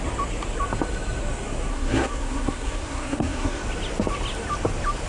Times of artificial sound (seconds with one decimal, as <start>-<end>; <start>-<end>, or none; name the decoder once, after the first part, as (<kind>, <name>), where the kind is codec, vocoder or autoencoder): 1.7-3.6 (codec, SNAC)